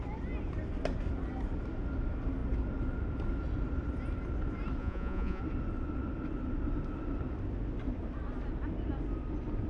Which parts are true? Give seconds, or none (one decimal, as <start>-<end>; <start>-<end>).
0.0-4.8; 5.4-9.7